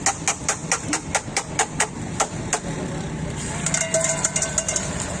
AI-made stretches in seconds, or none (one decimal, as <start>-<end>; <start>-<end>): 0.6-2.8